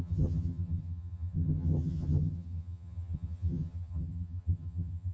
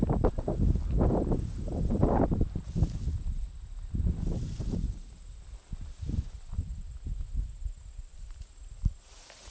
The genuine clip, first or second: second